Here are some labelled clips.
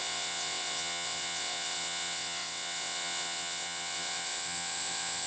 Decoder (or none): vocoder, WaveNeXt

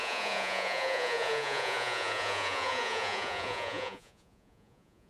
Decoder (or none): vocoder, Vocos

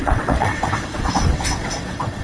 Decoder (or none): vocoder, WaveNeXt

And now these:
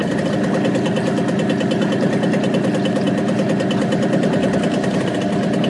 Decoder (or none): none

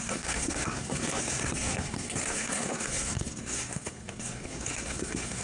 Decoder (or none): codec, SNAC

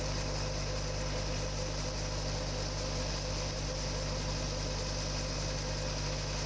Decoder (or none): none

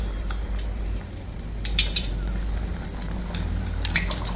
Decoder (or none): vocoder, BigVGAN v2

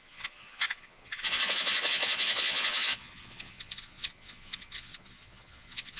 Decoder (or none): vocoder, Vocos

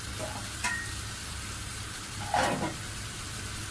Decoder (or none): none